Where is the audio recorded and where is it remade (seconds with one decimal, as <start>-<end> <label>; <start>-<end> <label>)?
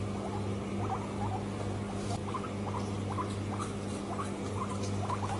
0.0-5.4 recorded